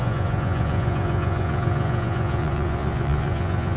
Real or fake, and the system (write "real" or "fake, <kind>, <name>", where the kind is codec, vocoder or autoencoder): fake, vocoder, Vocos